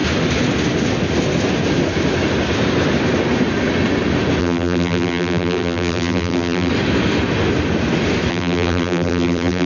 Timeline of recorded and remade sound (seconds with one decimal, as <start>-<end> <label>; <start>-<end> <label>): 0.0-4.4 recorded; 4.4-6.7 remade; 6.7-8.3 recorded; 8.3-9.7 remade